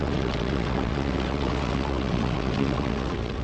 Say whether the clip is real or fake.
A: fake